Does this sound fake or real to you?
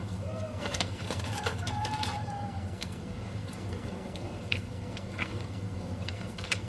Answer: fake